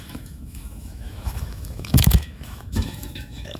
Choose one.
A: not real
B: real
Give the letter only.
A